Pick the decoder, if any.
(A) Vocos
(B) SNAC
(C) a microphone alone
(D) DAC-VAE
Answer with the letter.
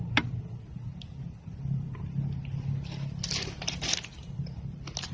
C